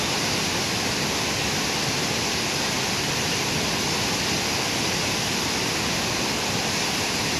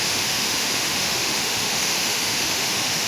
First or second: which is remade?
second